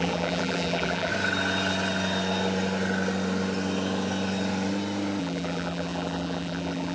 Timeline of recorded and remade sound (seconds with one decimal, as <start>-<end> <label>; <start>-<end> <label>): 0.0-1.1 remade; 1.1-5.2 recorded; 5.2-6.9 remade